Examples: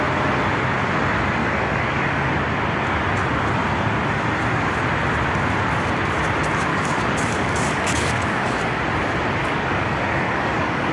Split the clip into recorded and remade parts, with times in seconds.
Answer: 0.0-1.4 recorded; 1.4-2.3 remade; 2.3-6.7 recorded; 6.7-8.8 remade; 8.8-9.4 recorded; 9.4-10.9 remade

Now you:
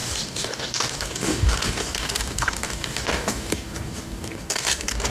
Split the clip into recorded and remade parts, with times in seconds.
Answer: 0.0-5.1 remade